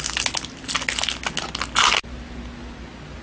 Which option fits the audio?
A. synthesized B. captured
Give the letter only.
B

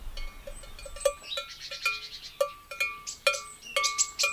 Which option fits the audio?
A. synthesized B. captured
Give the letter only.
B